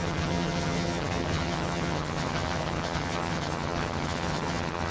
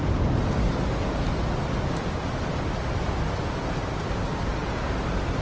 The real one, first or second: second